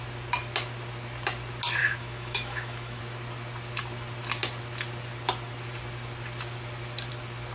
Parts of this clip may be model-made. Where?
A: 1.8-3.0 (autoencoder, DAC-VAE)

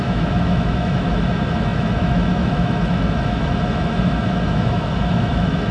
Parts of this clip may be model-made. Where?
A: 0.0-5.7 (autoencoder, DAC-VAE)

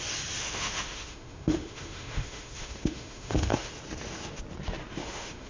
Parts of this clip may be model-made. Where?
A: 0.4-3.7 (autoencoder, DAC-VAE); 5.0-5.5

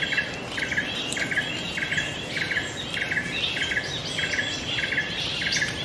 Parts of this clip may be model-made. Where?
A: none